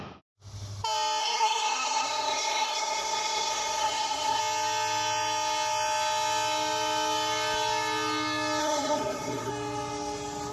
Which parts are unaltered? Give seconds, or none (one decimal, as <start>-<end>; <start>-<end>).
0.0-1.2; 4.4-8.6; 9.5-10.5